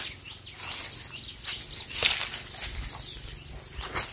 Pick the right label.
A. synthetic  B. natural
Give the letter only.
B